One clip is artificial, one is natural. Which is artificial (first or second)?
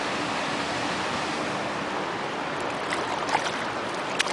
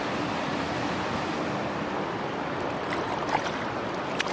second